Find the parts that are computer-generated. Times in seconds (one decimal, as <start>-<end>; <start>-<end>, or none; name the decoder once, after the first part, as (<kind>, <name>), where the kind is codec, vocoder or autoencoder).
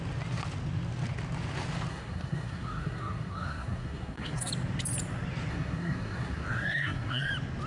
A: 1.9-4.5 (codec, SNAC); 5.5-7.3